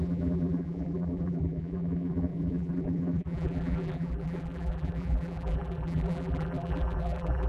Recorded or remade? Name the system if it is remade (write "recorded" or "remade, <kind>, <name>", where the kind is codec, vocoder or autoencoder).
remade, vocoder, BigVGAN v2